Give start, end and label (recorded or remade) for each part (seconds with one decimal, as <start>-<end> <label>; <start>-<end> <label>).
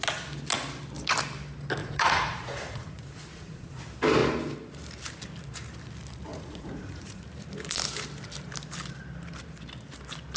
0.0-1.8 recorded; 1.8-3.8 remade; 3.8-6.3 recorded; 6.3-7.2 remade; 7.2-10.4 recorded